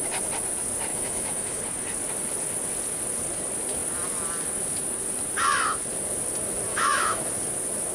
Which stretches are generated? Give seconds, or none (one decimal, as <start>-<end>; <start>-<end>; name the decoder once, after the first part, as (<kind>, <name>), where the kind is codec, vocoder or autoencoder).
0.9-1.6 (autoencoder, DAC-VAE); 6.7-7.2